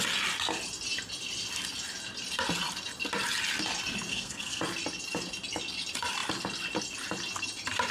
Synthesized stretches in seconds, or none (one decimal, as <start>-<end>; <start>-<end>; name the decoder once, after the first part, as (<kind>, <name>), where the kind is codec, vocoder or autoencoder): 4.1-4.6 (codec, SNAC)